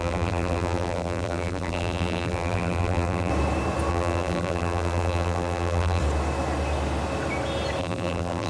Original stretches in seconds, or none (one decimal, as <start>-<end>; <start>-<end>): 3.3-3.9; 6.0-7.8